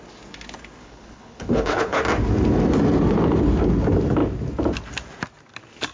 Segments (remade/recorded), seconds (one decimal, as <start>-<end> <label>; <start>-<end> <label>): 0.0-0.8 recorded; 0.8-2.0 remade; 2.0-5.9 recorded